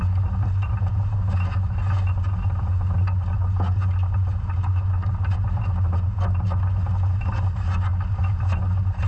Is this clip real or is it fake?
real